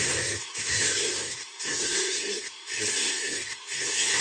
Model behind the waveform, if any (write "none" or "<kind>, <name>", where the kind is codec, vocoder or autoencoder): codec, SNAC